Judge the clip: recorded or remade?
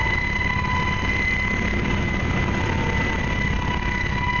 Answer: recorded